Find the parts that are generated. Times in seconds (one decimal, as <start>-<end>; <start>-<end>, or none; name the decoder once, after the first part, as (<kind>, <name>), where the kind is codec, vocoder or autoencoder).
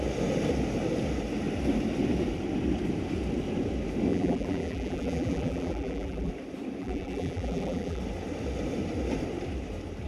4.1-6.3 (vocoder, BigVGAN v2); 6.8-8.0